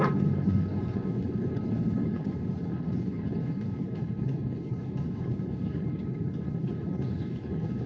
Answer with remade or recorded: remade